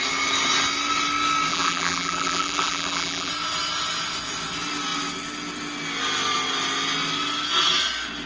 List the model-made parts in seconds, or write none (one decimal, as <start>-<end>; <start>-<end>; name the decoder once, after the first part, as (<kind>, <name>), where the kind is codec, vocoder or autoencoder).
1.5-3.3 (vocoder, BigVGAN v2)

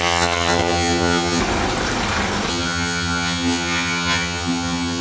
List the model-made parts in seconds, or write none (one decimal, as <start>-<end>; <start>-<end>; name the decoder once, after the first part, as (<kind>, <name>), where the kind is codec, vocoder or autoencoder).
0.0-1.4 (vocoder, HiFi-GAN); 2.5-5.0

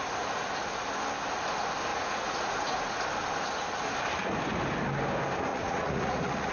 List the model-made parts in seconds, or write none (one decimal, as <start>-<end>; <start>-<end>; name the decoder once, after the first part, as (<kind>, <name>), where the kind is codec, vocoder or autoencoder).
1.9-3.0 (vocoder, Vocos); 5.5-6.5

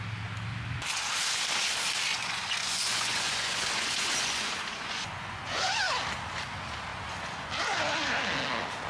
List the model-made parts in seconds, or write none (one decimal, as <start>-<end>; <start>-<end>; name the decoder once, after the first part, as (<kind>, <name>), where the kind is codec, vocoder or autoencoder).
2.1-5.8 (vocoder, Vocos); 6.9-7.5

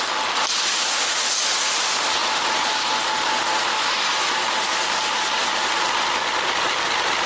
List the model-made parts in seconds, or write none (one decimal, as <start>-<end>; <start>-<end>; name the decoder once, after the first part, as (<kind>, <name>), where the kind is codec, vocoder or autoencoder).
3.7-4.3 (autoencoder, DAC-VAE)

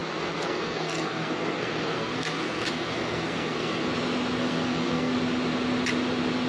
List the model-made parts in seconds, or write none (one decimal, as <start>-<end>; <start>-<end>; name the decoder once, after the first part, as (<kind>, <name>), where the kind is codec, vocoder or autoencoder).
0.0-3.9 (codec, SNAC); 4.4-5.1

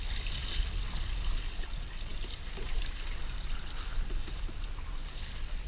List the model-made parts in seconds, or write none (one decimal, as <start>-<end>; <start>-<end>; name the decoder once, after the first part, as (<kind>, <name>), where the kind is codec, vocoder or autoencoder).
none